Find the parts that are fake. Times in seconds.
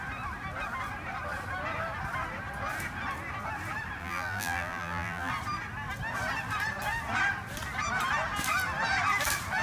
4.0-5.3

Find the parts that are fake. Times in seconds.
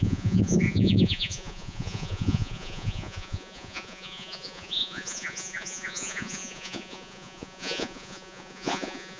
0.0-9.2